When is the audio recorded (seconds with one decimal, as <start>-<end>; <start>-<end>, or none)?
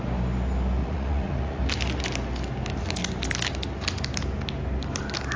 0.0-0.8; 1.6-5.4